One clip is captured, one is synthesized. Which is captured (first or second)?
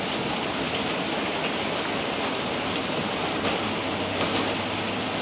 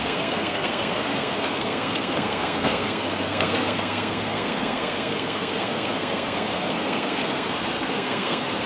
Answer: first